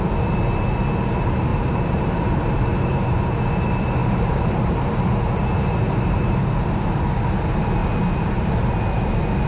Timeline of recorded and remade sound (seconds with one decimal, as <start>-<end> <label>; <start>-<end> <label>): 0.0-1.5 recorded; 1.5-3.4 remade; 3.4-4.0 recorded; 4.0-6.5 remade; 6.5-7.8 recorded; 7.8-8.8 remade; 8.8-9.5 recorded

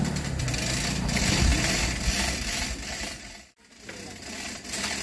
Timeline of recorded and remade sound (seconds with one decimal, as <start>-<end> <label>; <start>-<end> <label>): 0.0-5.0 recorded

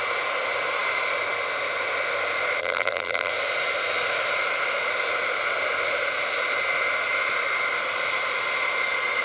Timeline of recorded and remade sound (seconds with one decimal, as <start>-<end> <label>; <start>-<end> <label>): 0.0-2.6 recorded; 2.6-3.3 remade; 3.3-9.2 recorded